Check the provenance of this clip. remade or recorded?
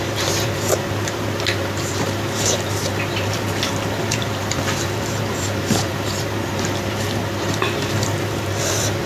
remade